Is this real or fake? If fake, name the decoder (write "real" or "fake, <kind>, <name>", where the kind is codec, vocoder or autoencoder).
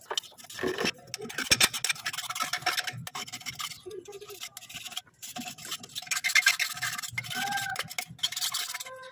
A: real